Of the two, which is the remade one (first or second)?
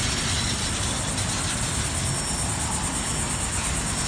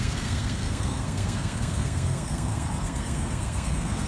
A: second